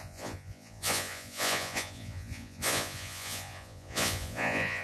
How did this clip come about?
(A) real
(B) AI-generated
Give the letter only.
B